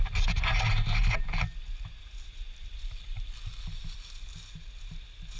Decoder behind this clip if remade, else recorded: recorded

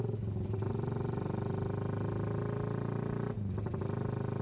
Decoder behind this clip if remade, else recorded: recorded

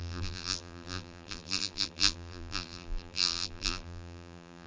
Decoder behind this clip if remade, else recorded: remade, vocoder, BigVGAN v2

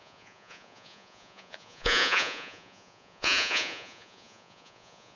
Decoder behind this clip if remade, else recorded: remade, vocoder, Vocos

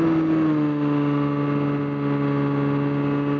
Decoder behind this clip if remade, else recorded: recorded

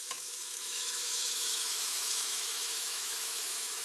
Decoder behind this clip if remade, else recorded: remade, autoencoder, DAC-VAE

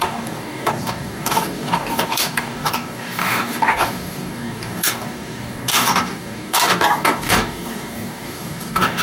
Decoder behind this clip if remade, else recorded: remade, codec, DAC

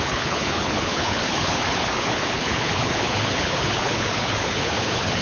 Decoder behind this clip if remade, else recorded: remade, codec, HILCodec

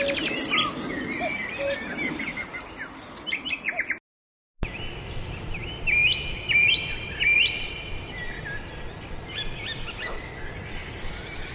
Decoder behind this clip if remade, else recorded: recorded